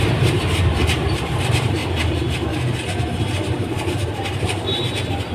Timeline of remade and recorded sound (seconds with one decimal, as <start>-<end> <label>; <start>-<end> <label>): 0.0-1.8 remade; 1.8-5.3 recorded